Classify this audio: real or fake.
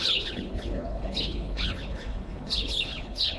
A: fake